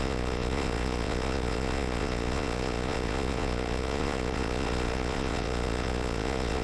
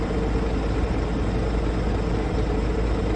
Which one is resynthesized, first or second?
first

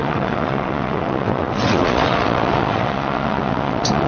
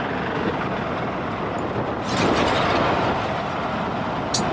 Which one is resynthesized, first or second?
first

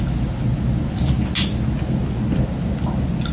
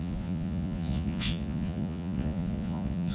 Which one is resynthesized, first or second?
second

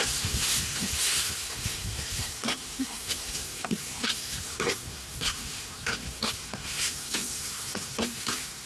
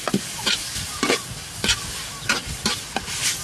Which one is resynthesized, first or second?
first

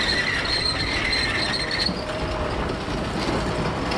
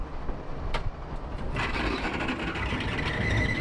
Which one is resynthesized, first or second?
second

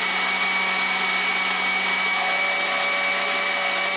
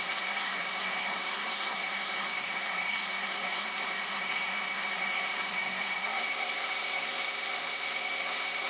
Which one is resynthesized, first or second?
second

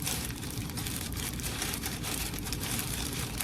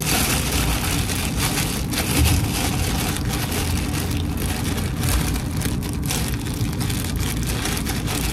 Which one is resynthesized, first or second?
first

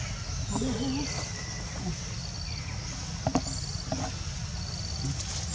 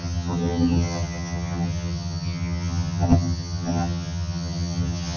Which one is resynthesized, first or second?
second